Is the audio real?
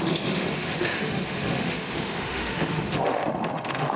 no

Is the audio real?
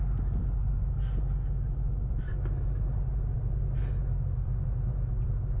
yes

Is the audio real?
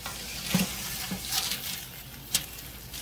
yes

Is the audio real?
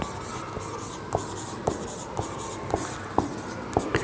yes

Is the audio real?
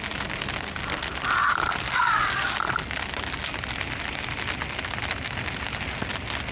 yes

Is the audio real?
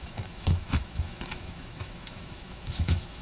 no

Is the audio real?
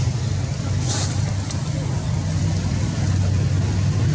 yes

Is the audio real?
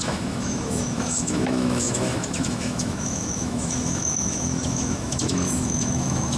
no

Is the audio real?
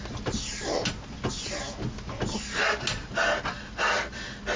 yes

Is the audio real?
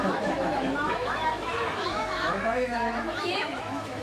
no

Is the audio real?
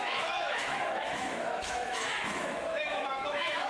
no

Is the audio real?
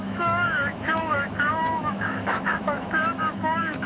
no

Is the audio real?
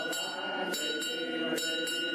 yes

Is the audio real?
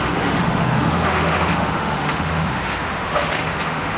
no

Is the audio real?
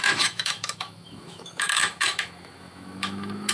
no